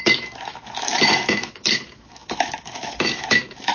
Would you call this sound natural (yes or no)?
no